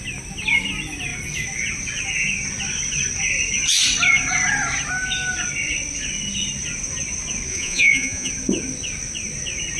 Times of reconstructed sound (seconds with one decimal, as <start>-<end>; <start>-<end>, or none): 7.5-8.3